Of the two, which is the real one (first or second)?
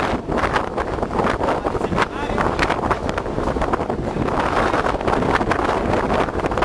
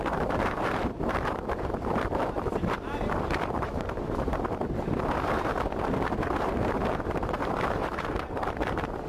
first